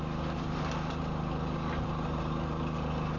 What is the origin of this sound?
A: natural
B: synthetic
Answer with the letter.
A